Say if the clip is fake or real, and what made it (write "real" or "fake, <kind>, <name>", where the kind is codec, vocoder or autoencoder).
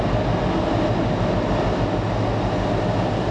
real